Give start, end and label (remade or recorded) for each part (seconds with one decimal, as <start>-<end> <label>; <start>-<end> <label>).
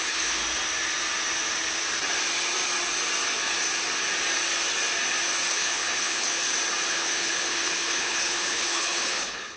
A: 0.0-0.4 remade; 0.4-5.5 recorded; 5.5-6.4 remade; 6.4-6.9 recorded; 6.9-9.6 remade